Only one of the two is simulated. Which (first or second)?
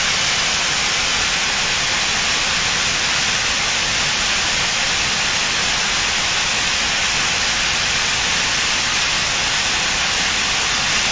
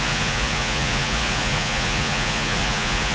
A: second